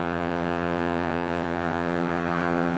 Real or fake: fake